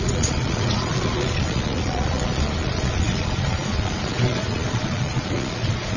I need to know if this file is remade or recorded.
remade